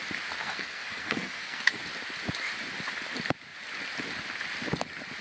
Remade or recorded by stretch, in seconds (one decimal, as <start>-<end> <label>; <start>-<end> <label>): 0.0-0.4 recorded; 0.4-1.8 remade; 1.8-5.2 recorded